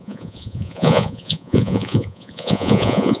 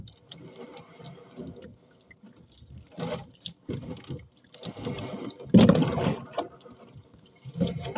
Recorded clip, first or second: second